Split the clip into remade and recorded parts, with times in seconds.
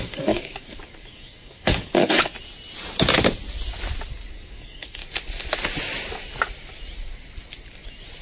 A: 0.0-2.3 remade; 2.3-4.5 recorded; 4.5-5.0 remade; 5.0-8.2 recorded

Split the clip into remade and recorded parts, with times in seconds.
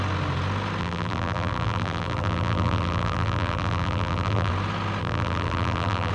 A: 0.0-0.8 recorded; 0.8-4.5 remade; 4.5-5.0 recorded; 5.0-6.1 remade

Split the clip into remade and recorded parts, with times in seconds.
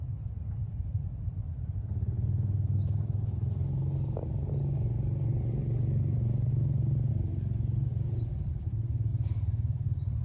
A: 0.0-0.6 recorded; 0.6-1.4 remade; 1.4-7.9 recorded; 7.9-8.5 remade; 8.5-9.1 recorded; 9.1-10.2 remade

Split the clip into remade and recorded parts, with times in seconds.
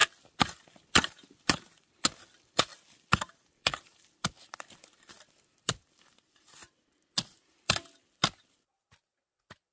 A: 0.0-2.7 remade; 2.7-3.5 recorded; 3.5-6.6 remade; 6.6-9.7 recorded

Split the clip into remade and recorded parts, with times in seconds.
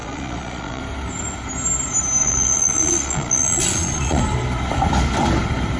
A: 0.0-0.8 remade; 0.8-2.2 recorded; 2.2-4.2 remade; 4.2-5.8 recorded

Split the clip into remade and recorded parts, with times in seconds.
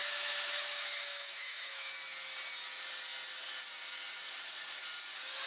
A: 0.0-1.9 remade; 1.9-5.5 recorded